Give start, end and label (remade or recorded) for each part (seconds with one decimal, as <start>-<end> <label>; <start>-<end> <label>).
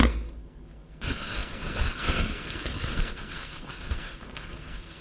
0.0-5.0 remade